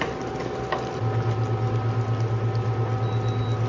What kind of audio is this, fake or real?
real